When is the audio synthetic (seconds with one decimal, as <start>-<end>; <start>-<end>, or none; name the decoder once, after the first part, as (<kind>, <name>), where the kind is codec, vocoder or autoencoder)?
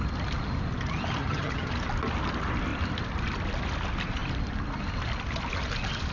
1.2-1.7 (vocoder, HiFi-GAN)